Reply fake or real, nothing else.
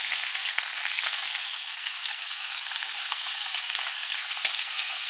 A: fake